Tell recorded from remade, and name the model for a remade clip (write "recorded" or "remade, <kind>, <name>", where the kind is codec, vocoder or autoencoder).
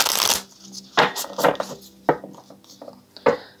recorded